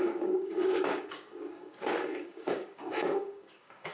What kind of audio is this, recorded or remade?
remade